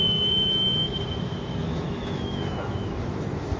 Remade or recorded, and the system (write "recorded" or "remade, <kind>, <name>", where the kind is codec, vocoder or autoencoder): remade, autoencoder, DAC-VAE